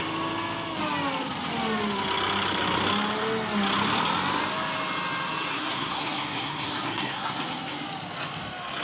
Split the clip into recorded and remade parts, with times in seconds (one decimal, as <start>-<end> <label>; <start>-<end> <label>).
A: 0.0-5.5 recorded; 5.5-7.4 remade; 7.4-8.8 recorded